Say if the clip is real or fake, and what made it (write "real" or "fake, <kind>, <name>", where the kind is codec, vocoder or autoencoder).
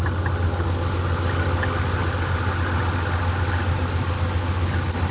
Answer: real